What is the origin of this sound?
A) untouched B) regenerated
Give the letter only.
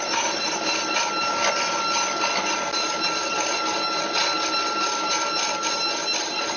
A